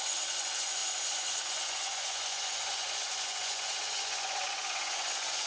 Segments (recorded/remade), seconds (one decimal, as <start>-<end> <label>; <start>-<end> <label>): 0.0-5.5 remade